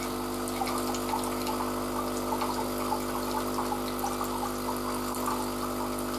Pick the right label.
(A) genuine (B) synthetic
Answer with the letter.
A